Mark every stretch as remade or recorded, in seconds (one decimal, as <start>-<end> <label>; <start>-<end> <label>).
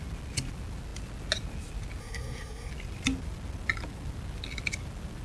0.0-2.0 recorded; 2.0-2.7 remade; 2.7-5.2 recorded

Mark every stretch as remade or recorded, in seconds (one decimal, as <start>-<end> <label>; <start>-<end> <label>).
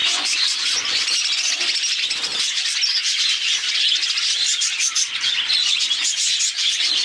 0.0-1.1 remade; 1.1-5.6 recorded; 5.6-6.4 remade; 6.4-7.0 recorded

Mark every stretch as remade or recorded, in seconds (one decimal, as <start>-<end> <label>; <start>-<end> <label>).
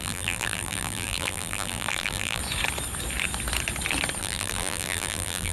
0.0-2.4 remade; 2.4-4.2 recorded; 4.2-5.5 remade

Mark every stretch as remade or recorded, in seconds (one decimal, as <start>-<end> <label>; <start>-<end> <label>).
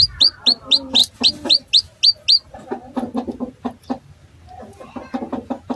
0.0-5.8 recorded